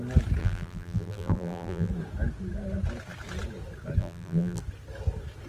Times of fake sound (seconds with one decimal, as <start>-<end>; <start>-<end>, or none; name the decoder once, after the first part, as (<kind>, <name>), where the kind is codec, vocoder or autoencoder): 0.4-1.9 (vocoder, BigVGAN v2); 4.0-4.6